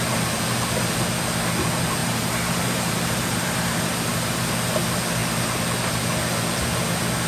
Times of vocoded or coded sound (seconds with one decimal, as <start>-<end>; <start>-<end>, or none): 2.0-4.5